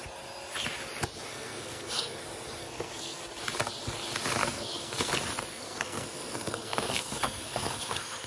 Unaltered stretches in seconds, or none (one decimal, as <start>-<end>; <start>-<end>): 0.0-1.3; 2.2-2.6; 3.2-4.4; 5.1-5.5